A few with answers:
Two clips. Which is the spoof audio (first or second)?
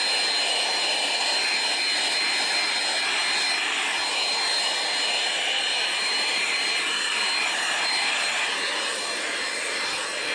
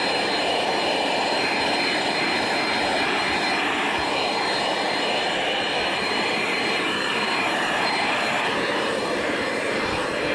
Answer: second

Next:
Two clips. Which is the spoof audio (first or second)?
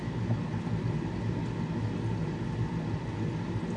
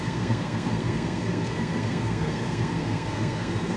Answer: second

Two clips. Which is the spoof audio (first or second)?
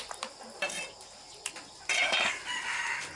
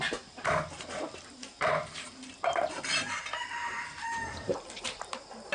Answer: second